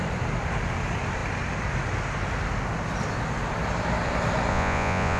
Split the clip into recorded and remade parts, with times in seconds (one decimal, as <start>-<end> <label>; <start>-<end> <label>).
0.0-4.5 recorded; 4.5-5.2 remade